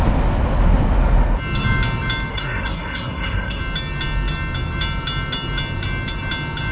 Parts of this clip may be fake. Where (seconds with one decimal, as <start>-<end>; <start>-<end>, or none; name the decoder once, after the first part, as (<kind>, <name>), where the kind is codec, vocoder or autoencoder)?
2.3-3.6 (codec, SNAC)

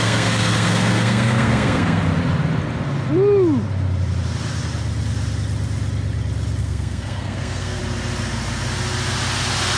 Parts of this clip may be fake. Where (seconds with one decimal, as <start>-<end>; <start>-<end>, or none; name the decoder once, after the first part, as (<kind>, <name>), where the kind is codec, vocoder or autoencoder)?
0.0-2.0 (codec, SNAC); 6.6-7.8

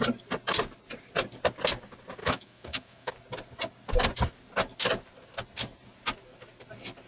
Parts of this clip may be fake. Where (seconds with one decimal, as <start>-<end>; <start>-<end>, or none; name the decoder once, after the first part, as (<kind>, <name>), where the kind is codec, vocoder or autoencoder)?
2.2-3.1 (autoencoder, DAC-VAE)

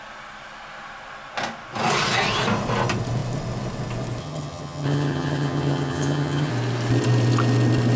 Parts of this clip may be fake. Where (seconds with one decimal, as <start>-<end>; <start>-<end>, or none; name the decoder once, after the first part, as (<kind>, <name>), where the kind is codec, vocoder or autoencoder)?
4.2-6.5 (vocoder, HiFi-GAN)